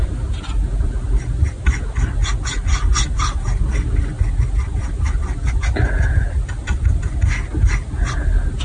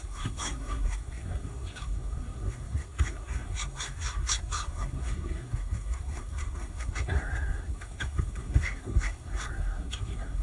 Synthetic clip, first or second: second